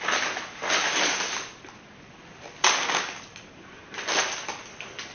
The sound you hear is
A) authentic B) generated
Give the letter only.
A